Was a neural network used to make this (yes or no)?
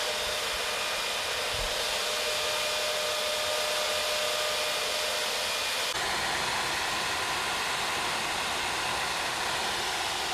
no